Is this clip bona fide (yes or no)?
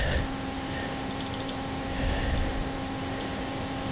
yes